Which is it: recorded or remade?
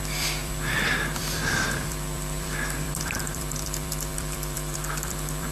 remade